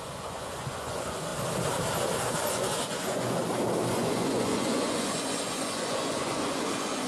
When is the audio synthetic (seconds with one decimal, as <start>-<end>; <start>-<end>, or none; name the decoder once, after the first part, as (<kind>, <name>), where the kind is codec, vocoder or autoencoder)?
0.0-1.3 (vocoder, Vocos); 2.3-3.4; 3.9-7.1